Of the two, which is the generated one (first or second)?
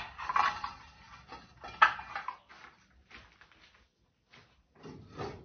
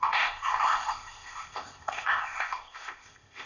second